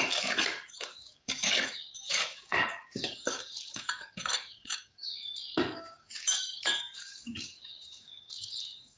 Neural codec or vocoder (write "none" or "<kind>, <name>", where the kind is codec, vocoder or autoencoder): codec, DAC